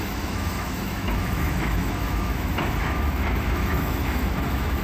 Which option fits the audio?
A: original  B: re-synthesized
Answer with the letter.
B